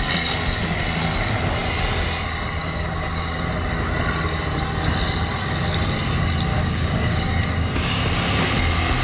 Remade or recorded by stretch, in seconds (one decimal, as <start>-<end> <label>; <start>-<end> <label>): 0.0-2.6 recorded; 2.6-3.5 remade; 3.5-6.5 recorded; 6.5-8.0 remade; 8.0-9.0 recorded